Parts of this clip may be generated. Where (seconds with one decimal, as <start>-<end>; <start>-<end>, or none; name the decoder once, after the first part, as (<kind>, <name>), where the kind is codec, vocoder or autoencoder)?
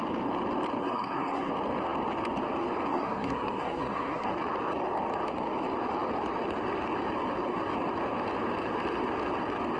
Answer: 0.8-1.5 (codec, SNAC); 2.9-4.3